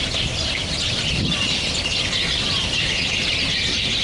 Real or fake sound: fake